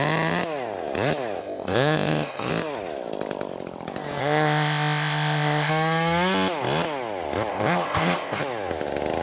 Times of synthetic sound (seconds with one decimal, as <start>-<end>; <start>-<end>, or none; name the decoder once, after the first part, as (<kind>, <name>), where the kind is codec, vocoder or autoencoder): 1.4-2.5 (codec, ZipCodec); 4.2-5.7; 7.5-8.4